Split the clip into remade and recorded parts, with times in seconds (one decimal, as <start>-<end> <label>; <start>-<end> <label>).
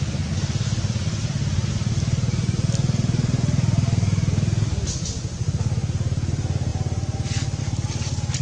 0.0-8.4 recorded